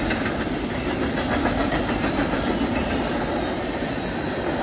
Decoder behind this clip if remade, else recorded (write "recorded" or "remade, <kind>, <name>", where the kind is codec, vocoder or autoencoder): recorded